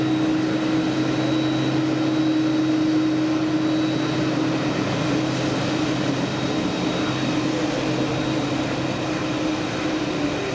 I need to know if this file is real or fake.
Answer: real